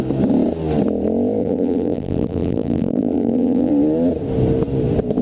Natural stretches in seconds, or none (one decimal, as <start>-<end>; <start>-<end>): 0.0-1.4; 3.7-5.2